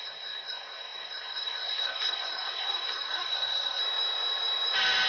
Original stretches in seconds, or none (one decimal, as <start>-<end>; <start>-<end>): 3.8-5.1